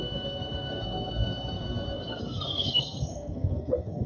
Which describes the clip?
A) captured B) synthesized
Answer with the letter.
B